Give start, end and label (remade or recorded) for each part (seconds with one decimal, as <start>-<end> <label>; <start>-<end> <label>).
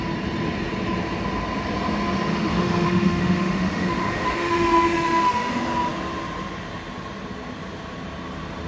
0.0-2.3 recorded; 2.3-5.5 remade; 5.5-8.7 recorded